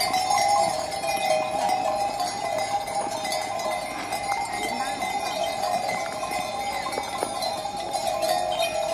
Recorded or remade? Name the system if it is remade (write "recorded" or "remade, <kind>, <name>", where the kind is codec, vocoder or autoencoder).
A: recorded